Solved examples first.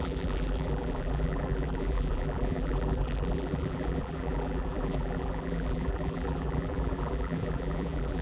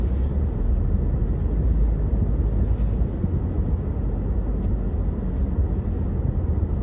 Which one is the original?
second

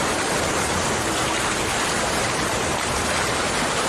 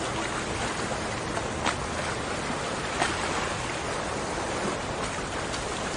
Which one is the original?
second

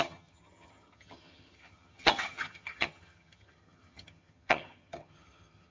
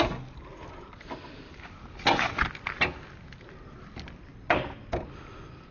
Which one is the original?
second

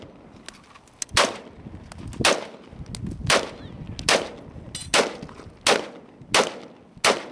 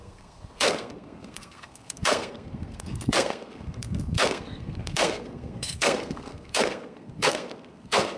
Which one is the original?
first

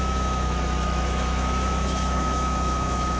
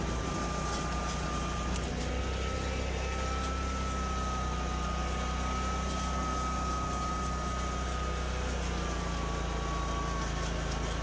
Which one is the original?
second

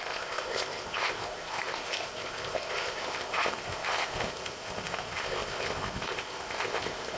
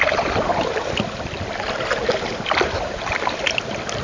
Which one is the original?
second